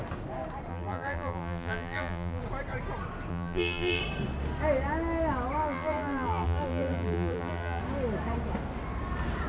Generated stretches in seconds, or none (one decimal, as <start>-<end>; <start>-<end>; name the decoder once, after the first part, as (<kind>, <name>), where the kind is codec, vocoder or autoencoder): 0.7-2.4 (vocoder, BigVGAN v2); 3.3-4.0; 5.6-7.8